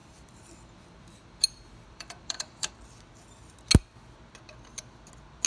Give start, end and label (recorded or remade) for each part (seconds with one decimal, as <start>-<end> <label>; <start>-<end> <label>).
0.0-2.7 remade; 2.7-5.5 recorded